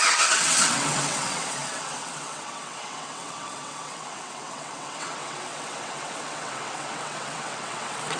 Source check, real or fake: fake